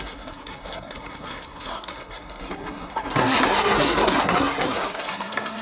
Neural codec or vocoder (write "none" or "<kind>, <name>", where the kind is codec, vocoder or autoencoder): codec, SNAC